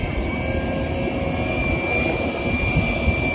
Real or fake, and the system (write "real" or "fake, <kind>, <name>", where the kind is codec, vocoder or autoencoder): real